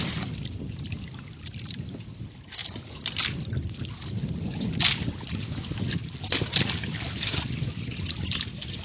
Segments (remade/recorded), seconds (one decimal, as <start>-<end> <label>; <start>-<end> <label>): 0.0-8.8 recorded